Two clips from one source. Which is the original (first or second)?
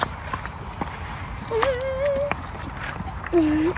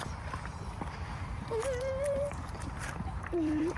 first